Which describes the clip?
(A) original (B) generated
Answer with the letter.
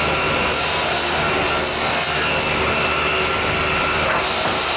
A